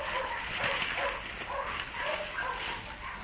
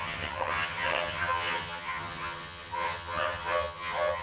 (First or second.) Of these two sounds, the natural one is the first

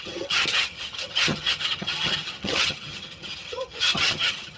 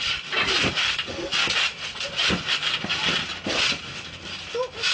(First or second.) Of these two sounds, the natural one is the second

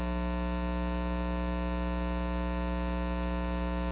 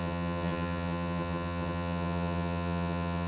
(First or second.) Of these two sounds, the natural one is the first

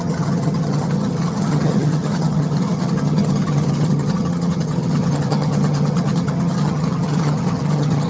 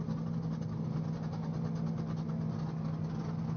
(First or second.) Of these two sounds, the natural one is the second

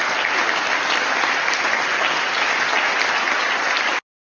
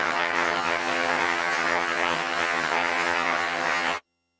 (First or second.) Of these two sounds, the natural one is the first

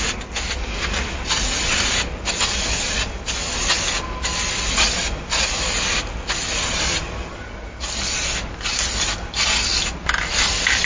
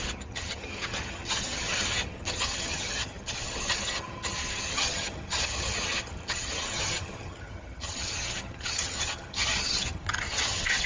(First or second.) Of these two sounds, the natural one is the first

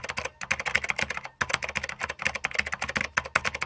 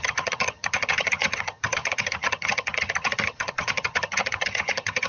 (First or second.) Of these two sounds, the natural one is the first